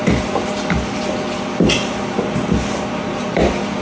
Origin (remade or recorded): recorded